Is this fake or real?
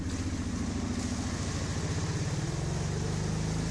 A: real